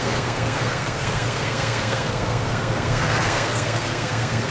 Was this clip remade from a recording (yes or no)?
yes